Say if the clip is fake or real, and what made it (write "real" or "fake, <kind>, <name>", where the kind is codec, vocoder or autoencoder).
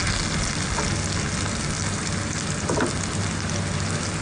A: real